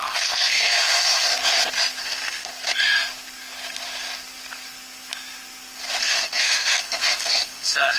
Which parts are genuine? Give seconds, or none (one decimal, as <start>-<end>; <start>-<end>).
1.3-2.0; 2.5-6.0